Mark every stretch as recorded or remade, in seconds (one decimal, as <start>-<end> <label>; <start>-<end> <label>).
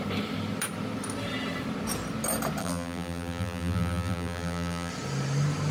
0.0-2.6 recorded; 2.6-4.9 remade; 4.9-5.7 recorded